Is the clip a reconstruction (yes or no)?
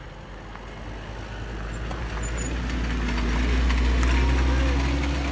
no